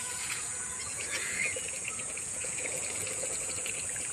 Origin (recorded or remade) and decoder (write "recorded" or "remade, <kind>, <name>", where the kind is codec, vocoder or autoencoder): remade, vocoder, Vocos